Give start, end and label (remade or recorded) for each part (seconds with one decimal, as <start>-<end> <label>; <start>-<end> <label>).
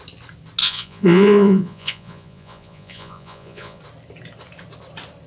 0.0-0.6 recorded; 0.6-3.8 remade; 3.8-5.3 recorded